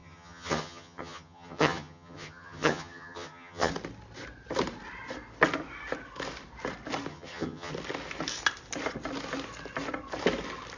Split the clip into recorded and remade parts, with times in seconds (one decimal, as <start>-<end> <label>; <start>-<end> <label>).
0.0-3.7 remade; 3.7-7.1 recorded; 7.1-7.7 remade; 7.7-10.8 recorded

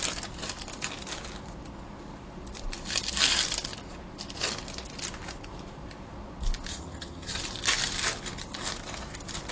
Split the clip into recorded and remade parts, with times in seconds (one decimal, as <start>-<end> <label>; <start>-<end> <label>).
0.0-6.7 recorded; 6.7-7.4 remade; 7.4-9.5 recorded

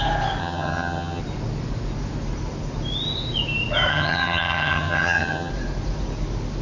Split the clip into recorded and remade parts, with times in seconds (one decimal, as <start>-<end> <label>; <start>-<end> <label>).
0.0-0.4 recorded; 0.4-1.2 remade; 1.2-3.9 recorded; 3.9-5.5 remade; 5.5-6.6 recorded

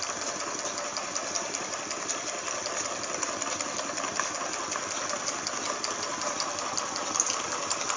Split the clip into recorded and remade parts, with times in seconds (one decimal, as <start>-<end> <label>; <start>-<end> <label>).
0.0-8.0 recorded

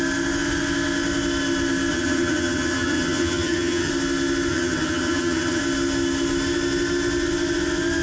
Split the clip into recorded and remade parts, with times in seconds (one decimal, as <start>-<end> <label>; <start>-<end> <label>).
0.0-1.9 recorded; 1.9-3.9 remade; 3.9-4.5 recorded; 4.5-5.6 remade; 5.6-8.0 recorded